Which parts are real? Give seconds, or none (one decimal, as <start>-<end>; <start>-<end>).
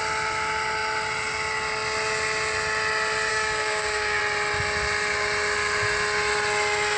0.0-3.3; 4.2-7.0